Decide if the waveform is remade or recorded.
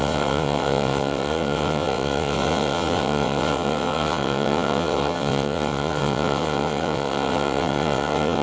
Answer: remade